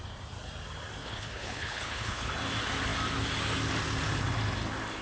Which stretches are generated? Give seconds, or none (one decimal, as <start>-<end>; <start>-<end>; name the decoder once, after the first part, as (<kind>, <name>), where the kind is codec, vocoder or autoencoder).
1.0-2.3 (codec, HILCodec)